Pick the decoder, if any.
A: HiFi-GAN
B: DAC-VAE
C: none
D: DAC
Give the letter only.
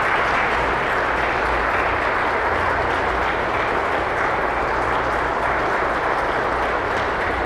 C